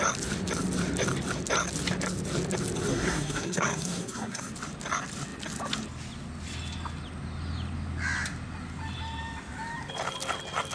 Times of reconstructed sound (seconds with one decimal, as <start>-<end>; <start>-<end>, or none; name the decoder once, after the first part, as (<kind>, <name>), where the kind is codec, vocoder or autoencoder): 2.9-4.5 (codec, SNAC)